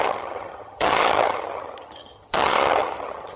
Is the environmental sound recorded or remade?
remade